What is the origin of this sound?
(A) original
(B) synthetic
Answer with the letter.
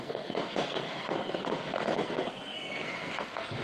B